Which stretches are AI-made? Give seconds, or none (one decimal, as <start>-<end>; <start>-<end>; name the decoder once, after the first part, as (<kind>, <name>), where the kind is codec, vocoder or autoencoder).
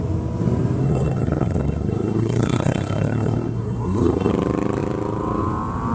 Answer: 0.8-4.3 (codec, SNAC)